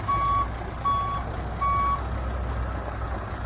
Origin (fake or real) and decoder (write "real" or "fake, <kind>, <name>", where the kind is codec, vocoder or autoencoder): real